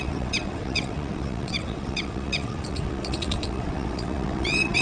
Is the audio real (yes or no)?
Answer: no